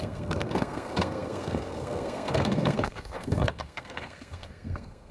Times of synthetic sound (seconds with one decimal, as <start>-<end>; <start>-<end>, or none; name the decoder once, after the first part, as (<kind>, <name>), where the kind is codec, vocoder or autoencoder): 0.0-5.1 (codec, SNAC)

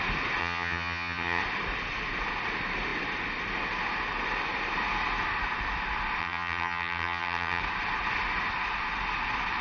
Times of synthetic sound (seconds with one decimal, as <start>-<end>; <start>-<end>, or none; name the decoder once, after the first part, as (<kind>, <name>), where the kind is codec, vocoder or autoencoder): 0.4-1.4 (vocoder, HiFi-GAN); 6.2-7.6

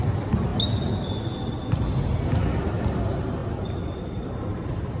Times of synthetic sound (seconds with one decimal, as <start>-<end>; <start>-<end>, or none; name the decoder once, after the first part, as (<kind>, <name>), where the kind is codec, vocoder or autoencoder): 3.4-4.6 (vocoder, BigVGAN v2)

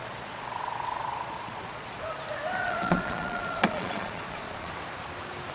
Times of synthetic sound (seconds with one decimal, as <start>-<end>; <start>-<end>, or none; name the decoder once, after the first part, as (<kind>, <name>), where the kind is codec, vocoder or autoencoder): 0.0-2.1 (vocoder, Vocos); 2.6-4.7